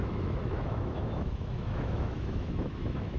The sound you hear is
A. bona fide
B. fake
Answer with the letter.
B